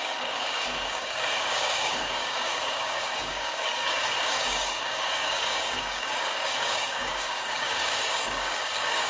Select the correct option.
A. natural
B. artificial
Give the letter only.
B